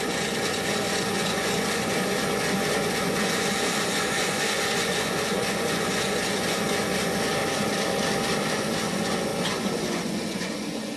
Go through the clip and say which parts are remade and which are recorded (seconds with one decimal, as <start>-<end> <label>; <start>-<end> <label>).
0.0-7.4 remade; 7.4-8.5 recorded; 8.5-11.0 remade